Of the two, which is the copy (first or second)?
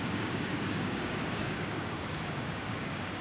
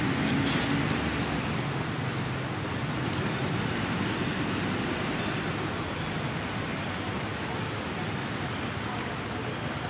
first